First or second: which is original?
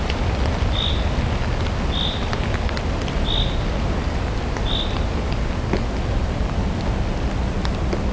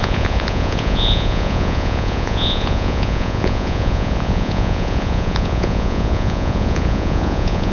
first